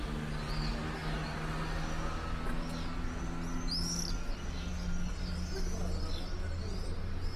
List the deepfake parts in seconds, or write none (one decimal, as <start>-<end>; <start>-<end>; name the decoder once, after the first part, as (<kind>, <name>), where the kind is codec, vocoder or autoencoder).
none